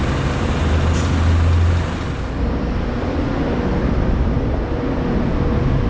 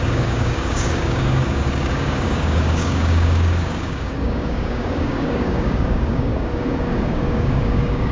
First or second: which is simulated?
second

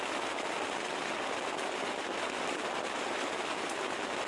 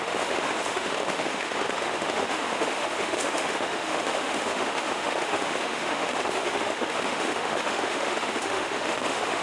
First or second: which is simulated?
second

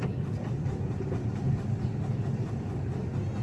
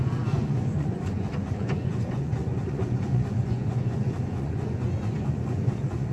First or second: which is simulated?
second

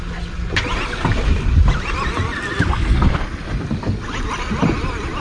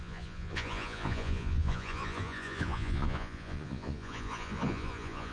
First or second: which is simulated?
second